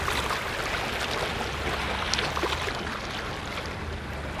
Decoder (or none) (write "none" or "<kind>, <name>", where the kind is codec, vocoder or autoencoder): none